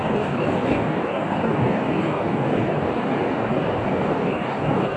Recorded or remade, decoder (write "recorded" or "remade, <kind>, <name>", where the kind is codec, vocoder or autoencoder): remade, codec, DAC